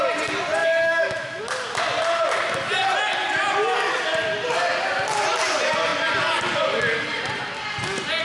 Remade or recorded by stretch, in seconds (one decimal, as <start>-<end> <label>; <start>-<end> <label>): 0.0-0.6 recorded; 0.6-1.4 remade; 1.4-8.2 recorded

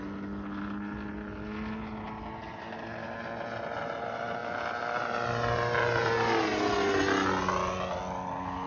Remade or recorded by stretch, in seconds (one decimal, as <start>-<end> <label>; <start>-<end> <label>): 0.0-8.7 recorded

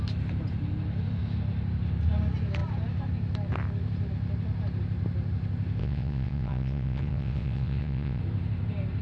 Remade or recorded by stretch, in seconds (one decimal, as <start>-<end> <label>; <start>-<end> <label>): 0.0-5.8 recorded; 5.8-8.2 remade; 8.2-9.0 recorded

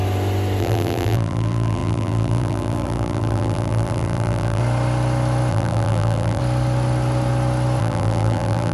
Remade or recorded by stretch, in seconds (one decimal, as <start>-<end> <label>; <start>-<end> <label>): 0.0-0.6 recorded; 0.6-4.6 remade; 4.6-5.5 recorded; 5.5-6.4 remade; 6.4-7.8 recorded; 7.8-8.7 remade

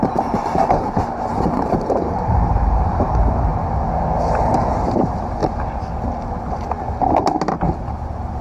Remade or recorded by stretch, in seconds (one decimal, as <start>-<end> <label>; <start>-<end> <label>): 0.0-0.6 remade; 0.6-1.3 recorded; 1.3-3.5 remade; 3.5-5.0 recorded; 5.0-5.4 remade; 5.4-7.9 recorded; 7.9-8.4 remade